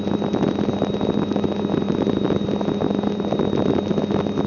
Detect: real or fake real